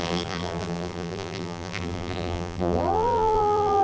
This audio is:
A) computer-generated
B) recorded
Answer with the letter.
A